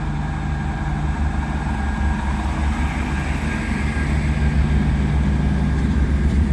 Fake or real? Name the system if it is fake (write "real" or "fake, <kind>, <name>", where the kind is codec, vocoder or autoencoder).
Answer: real